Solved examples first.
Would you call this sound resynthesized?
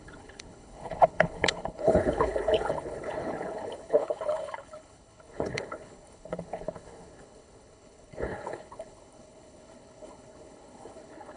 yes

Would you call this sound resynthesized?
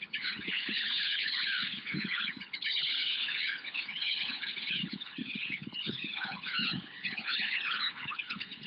yes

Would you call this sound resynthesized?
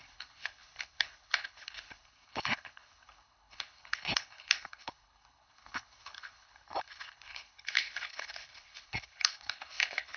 yes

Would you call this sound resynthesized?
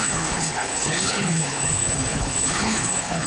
yes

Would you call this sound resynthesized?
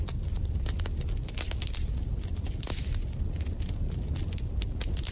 no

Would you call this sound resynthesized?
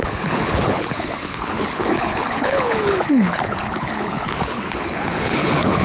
yes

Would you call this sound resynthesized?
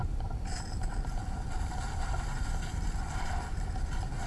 no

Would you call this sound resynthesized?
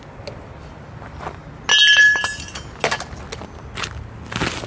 no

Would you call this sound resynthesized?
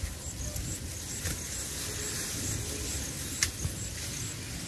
no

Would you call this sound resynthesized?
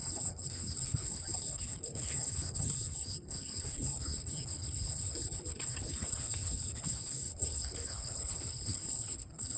yes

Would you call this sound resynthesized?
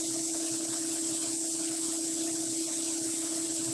yes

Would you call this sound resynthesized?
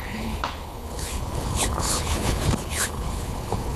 yes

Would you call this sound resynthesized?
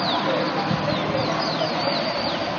no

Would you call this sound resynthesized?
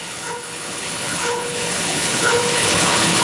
yes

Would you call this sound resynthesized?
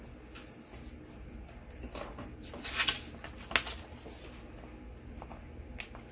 no